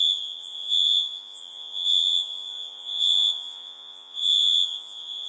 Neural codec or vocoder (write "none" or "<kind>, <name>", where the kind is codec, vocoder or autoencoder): vocoder, Vocos